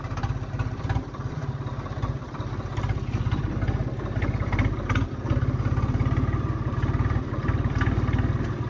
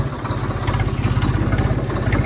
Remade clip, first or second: first